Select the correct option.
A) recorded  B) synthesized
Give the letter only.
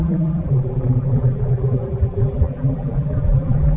B